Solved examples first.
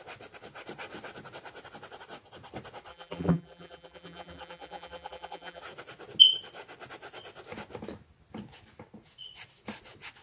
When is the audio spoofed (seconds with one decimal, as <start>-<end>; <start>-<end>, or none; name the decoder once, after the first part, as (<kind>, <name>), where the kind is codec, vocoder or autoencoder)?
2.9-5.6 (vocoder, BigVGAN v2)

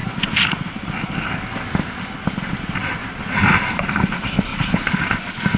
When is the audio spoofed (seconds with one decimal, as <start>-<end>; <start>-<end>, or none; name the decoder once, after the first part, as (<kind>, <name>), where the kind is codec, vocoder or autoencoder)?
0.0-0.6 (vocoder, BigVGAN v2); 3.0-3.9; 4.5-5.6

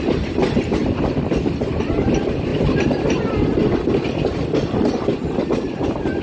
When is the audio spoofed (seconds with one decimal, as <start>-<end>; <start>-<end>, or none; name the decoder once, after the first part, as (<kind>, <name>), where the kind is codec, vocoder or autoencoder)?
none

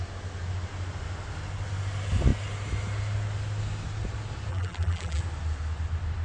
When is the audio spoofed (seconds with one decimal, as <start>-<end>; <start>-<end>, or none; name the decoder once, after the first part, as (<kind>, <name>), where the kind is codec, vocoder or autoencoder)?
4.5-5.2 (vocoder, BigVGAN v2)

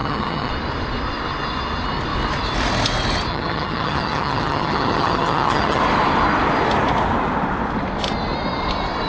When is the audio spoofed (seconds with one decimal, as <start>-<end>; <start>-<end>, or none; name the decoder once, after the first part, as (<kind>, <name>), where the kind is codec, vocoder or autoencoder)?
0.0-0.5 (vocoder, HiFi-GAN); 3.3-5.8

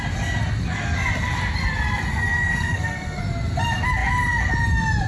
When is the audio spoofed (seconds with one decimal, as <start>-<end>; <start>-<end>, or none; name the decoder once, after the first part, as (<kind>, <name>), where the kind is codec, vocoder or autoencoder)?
2.1-3.2 (codec, SNAC)

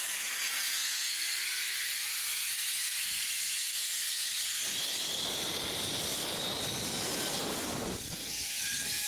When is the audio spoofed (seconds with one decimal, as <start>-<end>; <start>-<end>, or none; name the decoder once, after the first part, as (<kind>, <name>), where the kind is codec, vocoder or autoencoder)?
0.0-4.6 (codec, SNAC); 7.3-9.1